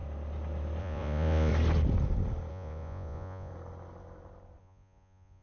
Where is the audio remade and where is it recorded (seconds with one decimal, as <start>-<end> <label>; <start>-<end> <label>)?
0.0-0.8 recorded; 0.8-1.5 remade; 1.5-2.5 recorded; 2.5-3.5 remade; 3.5-4.6 recorded; 4.6-5.4 remade